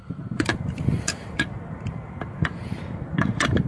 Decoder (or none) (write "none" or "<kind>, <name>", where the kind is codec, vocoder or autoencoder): vocoder, BigVGAN v2